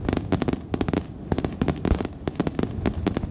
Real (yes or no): yes